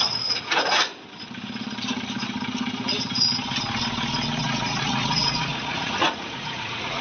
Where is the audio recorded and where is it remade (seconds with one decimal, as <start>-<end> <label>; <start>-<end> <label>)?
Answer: 0.0-0.9 remade; 0.9-4.4 recorded; 4.4-7.0 remade